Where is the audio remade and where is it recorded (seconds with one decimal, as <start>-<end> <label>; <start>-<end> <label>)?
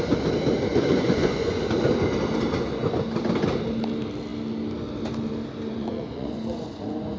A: 0.0-0.7 recorded; 0.7-1.6 remade; 1.6-5.7 recorded; 5.7-7.2 remade